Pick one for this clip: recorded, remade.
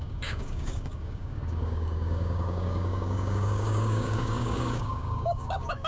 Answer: remade